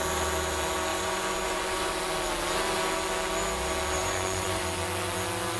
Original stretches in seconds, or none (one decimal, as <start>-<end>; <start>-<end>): 0.0-0.9; 1.9-4.0; 4.6-5.6